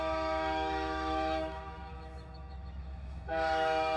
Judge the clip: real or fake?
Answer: fake